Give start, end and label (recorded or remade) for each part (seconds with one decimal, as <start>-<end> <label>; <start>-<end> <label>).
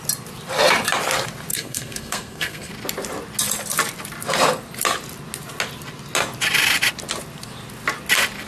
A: 0.0-1.5 recorded; 1.5-2.7 remade; 2.7-8.5 recorded